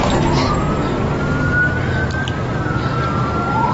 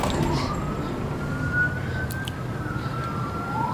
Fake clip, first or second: second